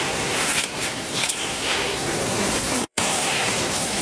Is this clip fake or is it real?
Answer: fake